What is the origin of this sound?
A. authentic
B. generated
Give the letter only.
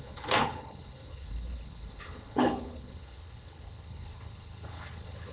B